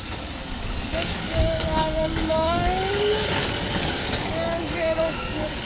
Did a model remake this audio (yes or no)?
yes